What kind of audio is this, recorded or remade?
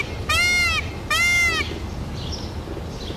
recorded